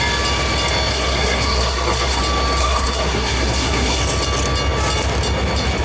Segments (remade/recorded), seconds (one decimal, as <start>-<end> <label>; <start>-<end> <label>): 0.0-0.9 recorded; 0.9-2.2 remade; 2.2-2.6 recorded; 2.6-4.0 remade; 4.0-5.8 recorded